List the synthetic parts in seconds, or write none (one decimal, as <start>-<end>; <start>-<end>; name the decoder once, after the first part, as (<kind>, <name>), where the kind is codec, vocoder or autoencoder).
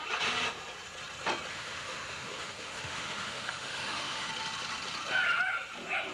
1.5-4.3 (autoencoder, DAC-VAE)